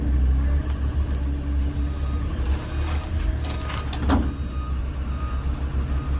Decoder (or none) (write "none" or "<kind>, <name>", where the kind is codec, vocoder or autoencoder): none